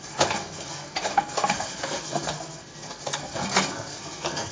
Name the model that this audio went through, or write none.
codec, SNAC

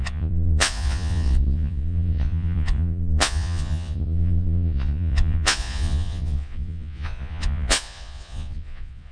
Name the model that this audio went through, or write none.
vocoder, Vocos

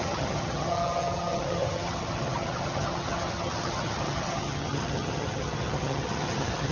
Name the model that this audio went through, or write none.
vocoder, HiFi-GAN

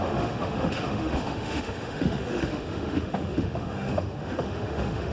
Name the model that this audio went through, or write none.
autoencoder, DAC-VAE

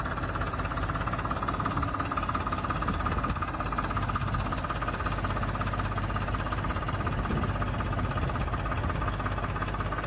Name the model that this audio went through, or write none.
none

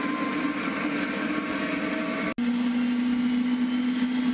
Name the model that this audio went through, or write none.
none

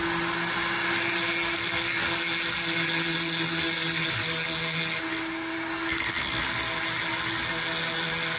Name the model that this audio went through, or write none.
none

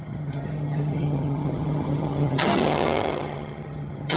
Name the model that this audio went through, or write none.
vocoder, HiFi-GAN